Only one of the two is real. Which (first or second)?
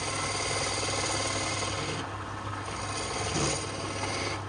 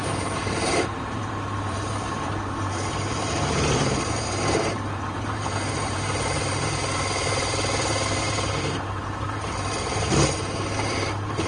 first